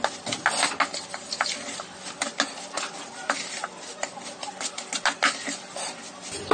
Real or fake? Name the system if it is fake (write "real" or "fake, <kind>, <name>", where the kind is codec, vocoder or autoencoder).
real